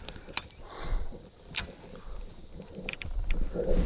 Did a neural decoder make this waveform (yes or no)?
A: no